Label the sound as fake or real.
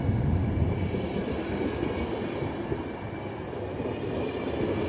real